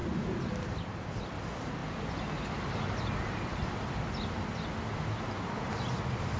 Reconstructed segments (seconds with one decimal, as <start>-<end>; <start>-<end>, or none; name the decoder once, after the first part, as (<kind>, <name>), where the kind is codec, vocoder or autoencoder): none